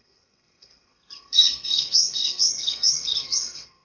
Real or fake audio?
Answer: fake